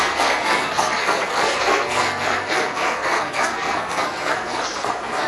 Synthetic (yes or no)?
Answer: yes